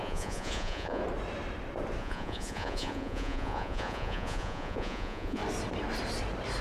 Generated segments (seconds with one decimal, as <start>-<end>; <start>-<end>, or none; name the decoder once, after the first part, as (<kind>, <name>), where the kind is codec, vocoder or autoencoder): 0.0-1.0 (vocoder, Vocos); 2.0-5.4